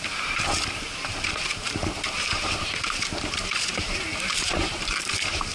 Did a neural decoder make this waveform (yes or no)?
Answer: yes